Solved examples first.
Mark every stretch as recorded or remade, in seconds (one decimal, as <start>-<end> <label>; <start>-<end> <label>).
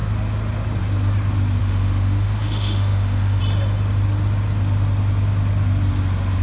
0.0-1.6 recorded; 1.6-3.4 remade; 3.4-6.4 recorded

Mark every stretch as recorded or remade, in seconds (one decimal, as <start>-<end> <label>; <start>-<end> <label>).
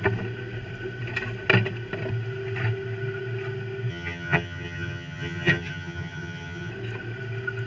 0.0-3.9 recorded; 3.9-6.7 remade; 6.7-7.7 recorded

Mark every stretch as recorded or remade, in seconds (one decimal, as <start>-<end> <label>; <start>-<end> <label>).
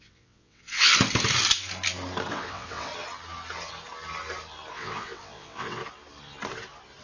0.0-0.9 remade; 0.9-2.3 recorded; 2.3-2.9 remade; 2.9-4.7 recorded; 4.7-5.8 remade; 5.8-7.0 recorded